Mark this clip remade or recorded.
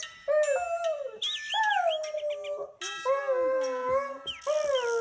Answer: recorded